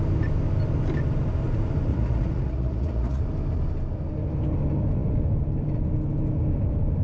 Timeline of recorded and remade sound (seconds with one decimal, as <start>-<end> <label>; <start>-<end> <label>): 0.0-1.9 recorded; 1.9-3.2 remade; 3.2-7.0 recorded